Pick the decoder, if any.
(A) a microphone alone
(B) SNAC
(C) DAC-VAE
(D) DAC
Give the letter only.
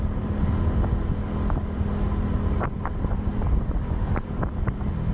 A